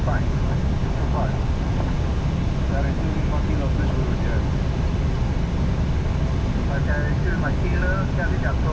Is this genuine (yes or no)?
yes